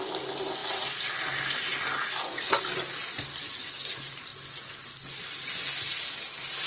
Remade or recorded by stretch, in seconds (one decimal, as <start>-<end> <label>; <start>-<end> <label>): 0.0-6.7 recorded